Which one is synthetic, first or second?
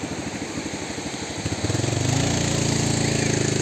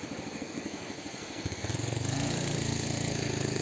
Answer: second